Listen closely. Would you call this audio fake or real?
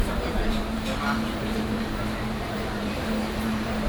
fake